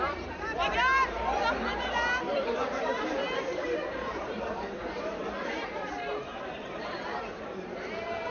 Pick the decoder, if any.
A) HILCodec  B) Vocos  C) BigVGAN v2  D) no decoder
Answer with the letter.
C